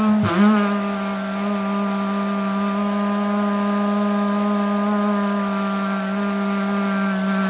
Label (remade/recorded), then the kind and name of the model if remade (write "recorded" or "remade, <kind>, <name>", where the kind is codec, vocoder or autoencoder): recorded